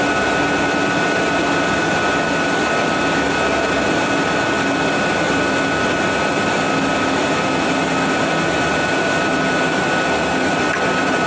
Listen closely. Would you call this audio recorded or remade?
recorded